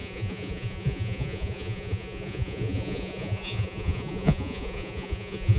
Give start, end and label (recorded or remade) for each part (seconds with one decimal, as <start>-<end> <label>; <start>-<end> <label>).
0.0-5.6 remade